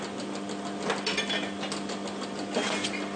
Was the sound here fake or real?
real